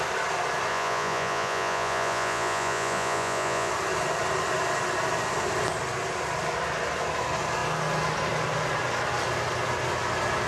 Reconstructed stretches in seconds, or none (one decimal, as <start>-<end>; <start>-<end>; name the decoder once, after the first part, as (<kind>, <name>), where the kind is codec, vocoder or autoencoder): 0.7-3.7 (vocoder, Vocos)